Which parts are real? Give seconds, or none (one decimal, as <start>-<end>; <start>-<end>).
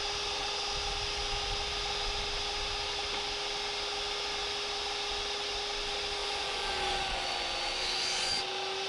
0.0-6.2; 8.5-8.9